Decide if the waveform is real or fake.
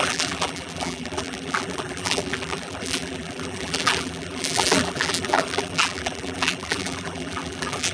fake